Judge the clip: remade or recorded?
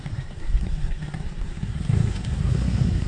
remade